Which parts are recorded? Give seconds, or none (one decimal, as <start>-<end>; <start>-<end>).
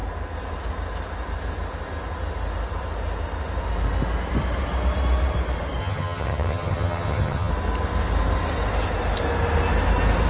0.0-5.8; 7.5-10.3